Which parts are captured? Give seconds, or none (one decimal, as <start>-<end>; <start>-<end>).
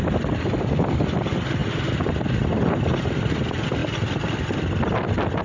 0.0-5.4